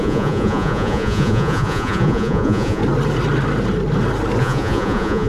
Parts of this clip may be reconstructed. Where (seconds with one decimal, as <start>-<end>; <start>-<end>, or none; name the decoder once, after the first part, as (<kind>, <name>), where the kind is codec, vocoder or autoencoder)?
0.0-2.8 (vocoder, Vocos); 4.4-5.3